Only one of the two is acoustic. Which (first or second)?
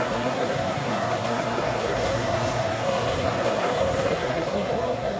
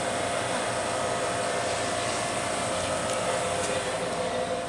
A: second